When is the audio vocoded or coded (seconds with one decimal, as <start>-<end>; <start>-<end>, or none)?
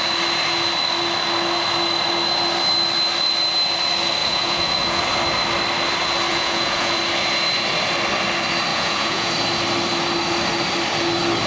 4.2-5.0; 6.3-7.0; 8.7-9.3